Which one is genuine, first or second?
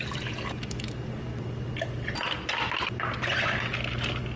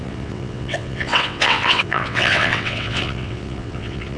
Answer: first